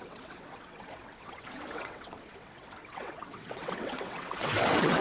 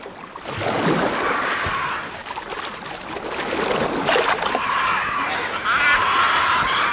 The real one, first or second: second